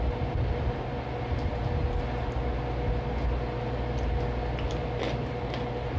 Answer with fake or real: real